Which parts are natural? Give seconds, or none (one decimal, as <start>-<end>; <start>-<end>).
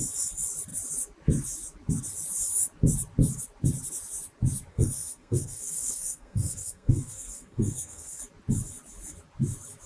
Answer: 0.0-4.7; 8.2-9.9